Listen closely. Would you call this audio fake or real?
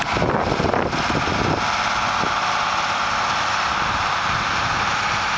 real